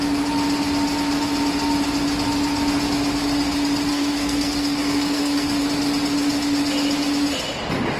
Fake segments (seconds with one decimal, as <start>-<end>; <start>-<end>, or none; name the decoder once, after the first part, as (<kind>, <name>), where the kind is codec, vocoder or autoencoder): 3.9-5.6 (codec, SNAC)